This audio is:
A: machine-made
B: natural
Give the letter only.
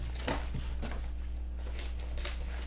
B